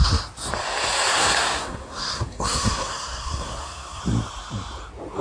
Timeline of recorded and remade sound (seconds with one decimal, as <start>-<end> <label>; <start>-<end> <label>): 0.0-1.1 recorded; 1.1-4.0 remade; 4.0-5.2 recorded